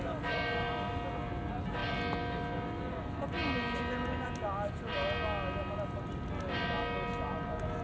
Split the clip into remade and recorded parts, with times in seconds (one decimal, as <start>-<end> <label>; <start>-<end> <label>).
0.0-7.8 recorded